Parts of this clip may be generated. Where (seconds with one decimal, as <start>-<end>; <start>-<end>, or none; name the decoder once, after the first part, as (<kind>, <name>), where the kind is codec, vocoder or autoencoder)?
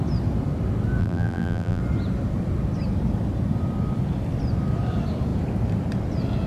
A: 1.0-1.8 (vocoder, BigVGAN v2)